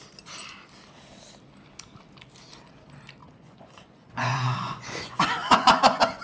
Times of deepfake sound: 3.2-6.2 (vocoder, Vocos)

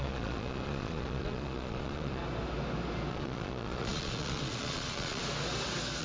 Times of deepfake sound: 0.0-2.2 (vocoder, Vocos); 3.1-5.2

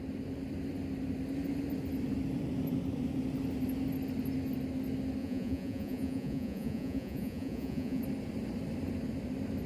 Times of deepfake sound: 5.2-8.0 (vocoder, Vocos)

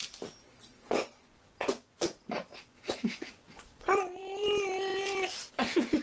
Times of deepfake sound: 0.6-4.2 (vocoder, Vocos)

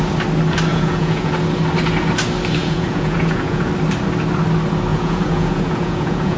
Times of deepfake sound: 0.7-1.3 (vocoder, Vocos); 2.6-3.7; 4.9-6.4